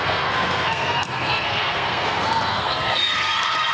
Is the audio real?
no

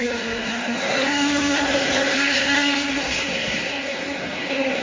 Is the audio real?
no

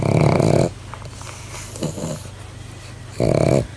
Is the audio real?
yes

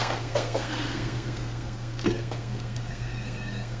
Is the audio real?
no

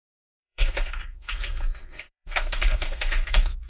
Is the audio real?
no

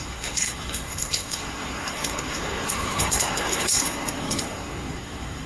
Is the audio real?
no